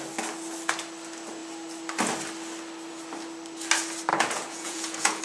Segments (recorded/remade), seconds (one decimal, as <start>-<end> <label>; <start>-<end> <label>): 0.0-4.1 recorded; 4.1-5.2 remade

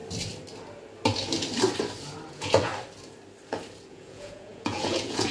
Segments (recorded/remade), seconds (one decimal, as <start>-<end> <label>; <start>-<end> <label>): 0.0-2.3 recorded; 2.3-2.7 remade; 2.7-3.9 recorded; 3.9-5.3 remade

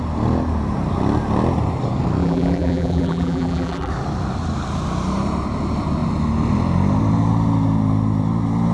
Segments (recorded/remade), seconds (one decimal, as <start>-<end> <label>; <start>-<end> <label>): 0.0-2.2 recorded; 2.2-3.9 remade; 3.9-8.7 recorded

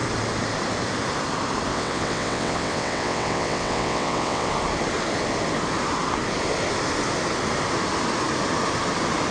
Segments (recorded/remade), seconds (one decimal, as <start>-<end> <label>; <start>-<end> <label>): 0.0-1.7 recorded; 1.7-4.5 remade; 4.5-9.3 recorded

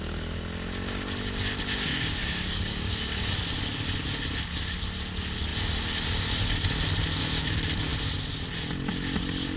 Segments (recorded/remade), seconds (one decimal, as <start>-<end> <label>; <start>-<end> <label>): 0.0-1.9 recorded; 1.9-3.3 remade; 3.3-9.6 recorded